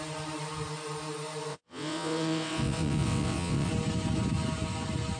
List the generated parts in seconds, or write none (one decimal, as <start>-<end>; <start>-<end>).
1.5-3.7